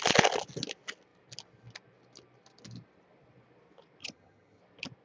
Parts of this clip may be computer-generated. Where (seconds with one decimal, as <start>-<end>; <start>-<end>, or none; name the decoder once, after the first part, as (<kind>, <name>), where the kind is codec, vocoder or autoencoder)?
4.0-4.6 (vocoder, HiFi-GAN)